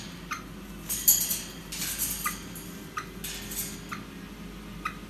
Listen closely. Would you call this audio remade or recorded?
recorded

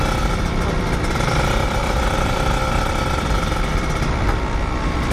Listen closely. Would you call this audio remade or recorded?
recorded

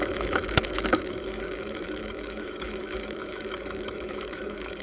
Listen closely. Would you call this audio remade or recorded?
remade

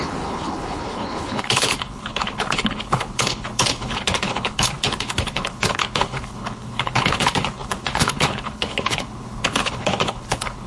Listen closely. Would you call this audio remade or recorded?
remade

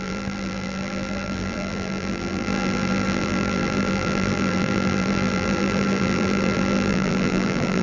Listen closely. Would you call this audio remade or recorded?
remade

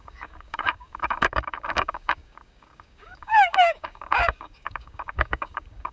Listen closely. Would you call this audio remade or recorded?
remade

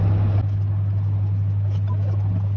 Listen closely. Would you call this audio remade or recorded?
recorded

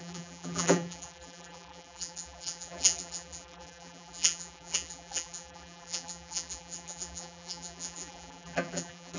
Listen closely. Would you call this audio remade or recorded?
remade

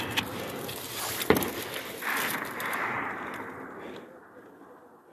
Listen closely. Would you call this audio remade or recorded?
recorded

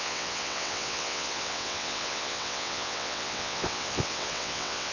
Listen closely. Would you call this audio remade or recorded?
remade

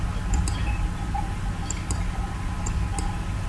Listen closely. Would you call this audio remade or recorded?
recorded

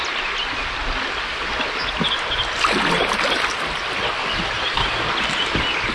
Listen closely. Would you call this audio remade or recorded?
recorded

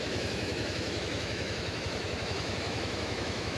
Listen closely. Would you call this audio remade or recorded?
remade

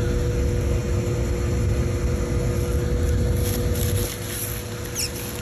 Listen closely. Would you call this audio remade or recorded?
recorded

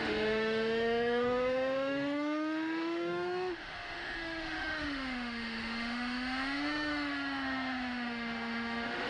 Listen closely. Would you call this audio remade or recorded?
remade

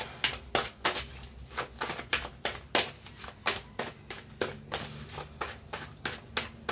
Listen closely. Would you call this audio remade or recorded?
recorded